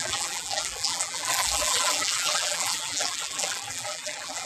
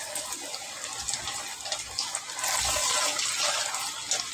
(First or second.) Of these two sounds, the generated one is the first